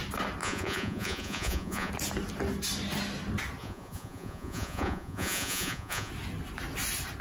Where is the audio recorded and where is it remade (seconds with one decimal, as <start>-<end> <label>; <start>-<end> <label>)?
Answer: 0.0-0.4 recorded; 0.4-1.9 remade; 1.9-3.6 recorded; 3.6-6.1 remade; 6.1-7.2 recorded